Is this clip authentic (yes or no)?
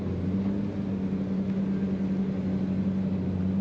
yes